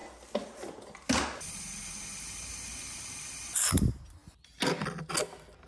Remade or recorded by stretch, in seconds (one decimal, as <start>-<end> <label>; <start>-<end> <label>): 0.0-5.7 recorded